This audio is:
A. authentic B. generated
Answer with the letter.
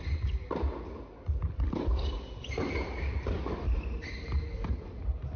A